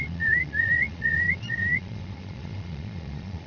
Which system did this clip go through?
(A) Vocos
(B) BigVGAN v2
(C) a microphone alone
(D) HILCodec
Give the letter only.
A